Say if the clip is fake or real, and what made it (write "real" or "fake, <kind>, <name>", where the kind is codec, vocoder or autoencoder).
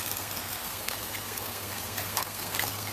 fake, codec, SNAC